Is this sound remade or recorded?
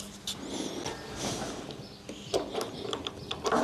recorded